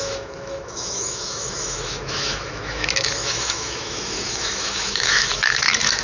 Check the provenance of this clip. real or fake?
fake